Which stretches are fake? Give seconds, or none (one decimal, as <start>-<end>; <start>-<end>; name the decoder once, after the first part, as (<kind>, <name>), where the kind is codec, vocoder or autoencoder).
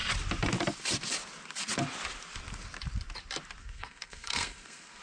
3.6-5.0 (codec, SNAC)